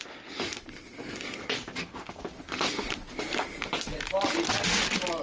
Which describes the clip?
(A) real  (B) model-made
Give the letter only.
A